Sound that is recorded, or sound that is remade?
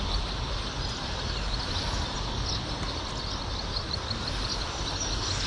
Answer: recorded